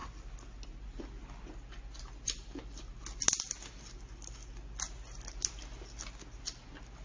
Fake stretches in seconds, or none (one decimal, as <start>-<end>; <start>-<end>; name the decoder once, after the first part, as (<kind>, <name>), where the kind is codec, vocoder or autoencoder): none